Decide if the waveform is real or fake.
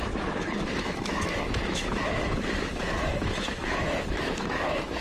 fake